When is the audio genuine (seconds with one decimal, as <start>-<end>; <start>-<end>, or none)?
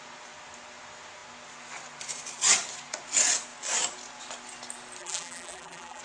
0.0-5.0